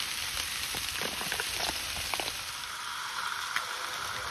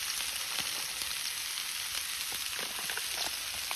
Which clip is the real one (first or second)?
second